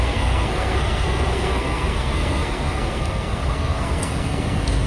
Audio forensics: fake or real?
fake